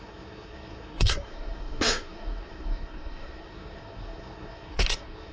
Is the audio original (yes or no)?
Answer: no